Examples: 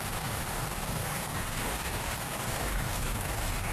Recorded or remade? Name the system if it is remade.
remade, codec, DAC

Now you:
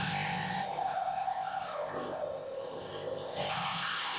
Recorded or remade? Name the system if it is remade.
remade, codec, ZipCodec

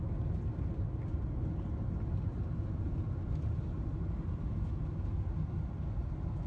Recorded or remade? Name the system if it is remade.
recorded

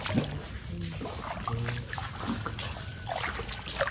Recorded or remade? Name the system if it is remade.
recorded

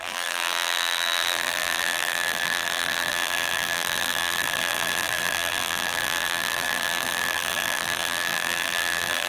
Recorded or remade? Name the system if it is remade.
remade, vocoder, BigVGAN v2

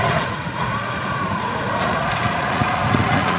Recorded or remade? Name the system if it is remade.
remade, vocoder, Vocos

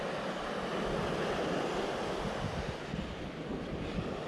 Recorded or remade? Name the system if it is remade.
recorded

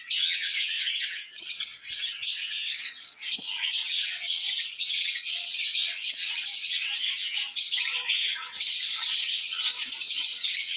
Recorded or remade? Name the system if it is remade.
remade, vocoder, WaveNeXt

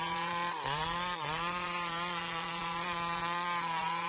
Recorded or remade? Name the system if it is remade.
remade, vocoder, Vocos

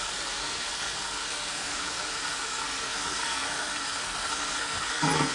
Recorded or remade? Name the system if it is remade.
remade, codec, SNAC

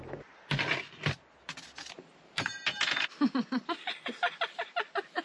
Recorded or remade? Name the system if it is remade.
recorded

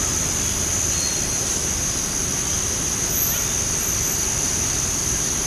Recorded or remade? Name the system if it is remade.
recorded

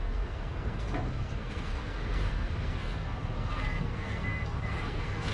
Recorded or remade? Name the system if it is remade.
remade, codec, SNAC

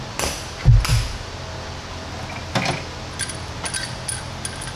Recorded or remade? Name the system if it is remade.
recorded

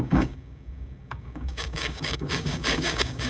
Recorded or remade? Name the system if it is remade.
remade, codec, DAC